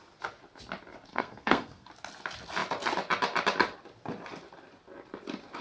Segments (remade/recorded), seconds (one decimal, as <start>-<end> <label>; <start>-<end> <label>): 0.0-1.1 recorded; 1.1-1.9 remade; 1.9-5.6 recorded